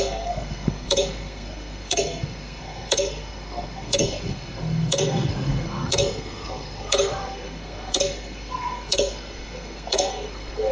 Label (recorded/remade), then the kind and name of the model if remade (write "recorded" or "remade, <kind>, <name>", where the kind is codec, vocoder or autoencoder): remade, codec, SNAC